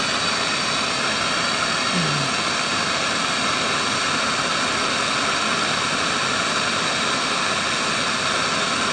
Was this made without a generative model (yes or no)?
yes